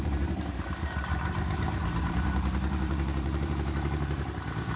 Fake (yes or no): yes